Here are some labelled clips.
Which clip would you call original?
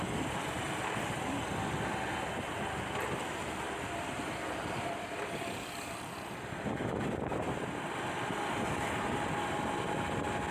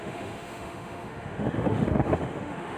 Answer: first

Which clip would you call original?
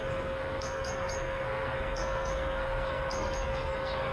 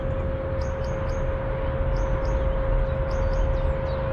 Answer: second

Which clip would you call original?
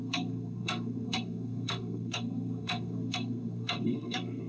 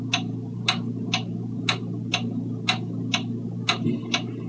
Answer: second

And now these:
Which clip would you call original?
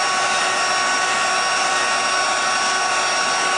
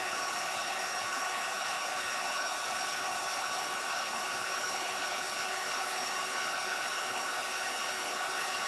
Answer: first